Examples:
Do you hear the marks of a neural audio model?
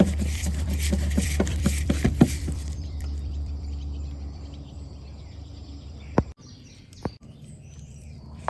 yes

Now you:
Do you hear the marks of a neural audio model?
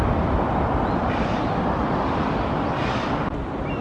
no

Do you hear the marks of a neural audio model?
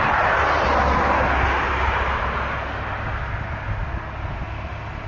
no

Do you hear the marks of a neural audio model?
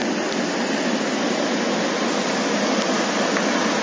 no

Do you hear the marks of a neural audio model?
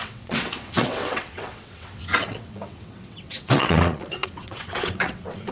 yes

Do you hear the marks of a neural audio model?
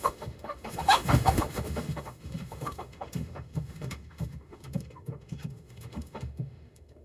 yes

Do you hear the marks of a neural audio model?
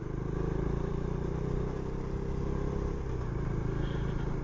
no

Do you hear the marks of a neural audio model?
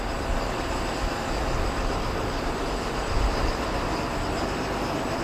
no